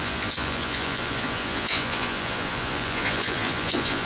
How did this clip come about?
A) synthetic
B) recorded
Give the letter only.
A